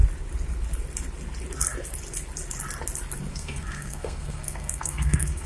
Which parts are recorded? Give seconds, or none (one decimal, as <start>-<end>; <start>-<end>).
0.0-3.3

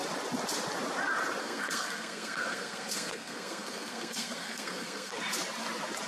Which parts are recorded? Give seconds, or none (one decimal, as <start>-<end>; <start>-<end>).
0.0-1.4; 5.1-6.1

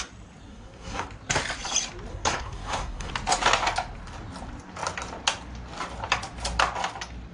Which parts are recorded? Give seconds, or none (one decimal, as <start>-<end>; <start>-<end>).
0.0-0.5; 1.1-2.1; 3.1-7.3

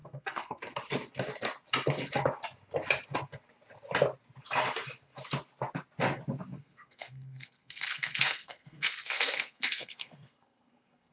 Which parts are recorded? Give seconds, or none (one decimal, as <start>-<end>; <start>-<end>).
0.6-6.5

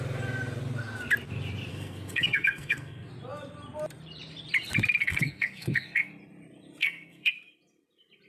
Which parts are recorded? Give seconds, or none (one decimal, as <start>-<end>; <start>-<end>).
0.0-1.7; 3.1-5.0; 6.1-6.8; 7.3-8.3

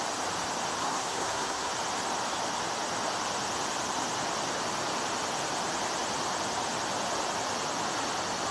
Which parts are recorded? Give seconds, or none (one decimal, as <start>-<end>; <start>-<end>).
0.0-0.8; 1.7-8.5

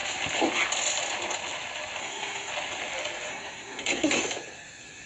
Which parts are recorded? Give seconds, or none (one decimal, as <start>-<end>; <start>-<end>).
0.0-2.0; 2.5-3.3; 4.2-5.1